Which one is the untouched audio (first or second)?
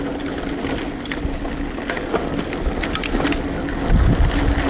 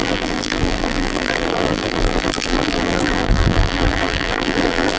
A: first